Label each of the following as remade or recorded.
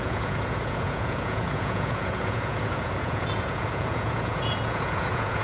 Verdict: remade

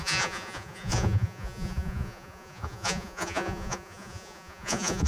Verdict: remade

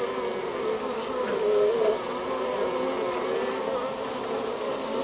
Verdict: recorded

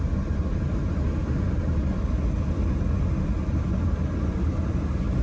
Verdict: recorded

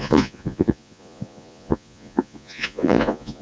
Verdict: remade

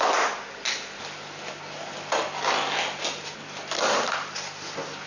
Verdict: recorded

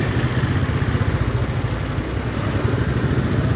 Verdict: recorded